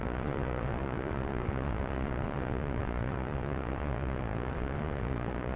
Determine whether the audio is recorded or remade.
remade